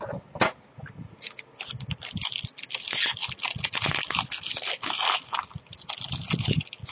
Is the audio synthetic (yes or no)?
no